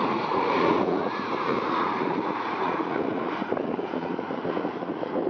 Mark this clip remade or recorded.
remade